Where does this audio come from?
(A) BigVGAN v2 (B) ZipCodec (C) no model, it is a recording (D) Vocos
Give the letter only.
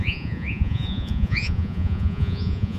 D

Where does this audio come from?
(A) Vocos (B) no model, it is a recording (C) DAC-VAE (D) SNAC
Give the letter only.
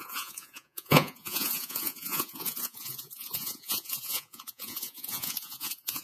A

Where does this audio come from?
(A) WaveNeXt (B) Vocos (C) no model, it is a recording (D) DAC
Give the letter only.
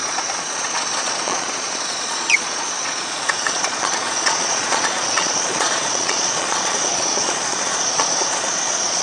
B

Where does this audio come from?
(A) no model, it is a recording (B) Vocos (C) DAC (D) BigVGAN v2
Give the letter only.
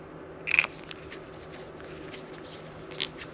A